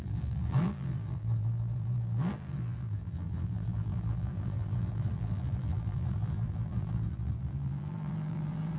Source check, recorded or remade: remade